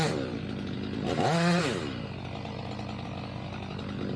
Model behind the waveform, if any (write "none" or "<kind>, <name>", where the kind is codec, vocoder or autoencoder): none